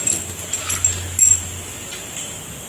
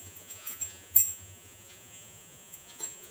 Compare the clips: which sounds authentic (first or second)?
first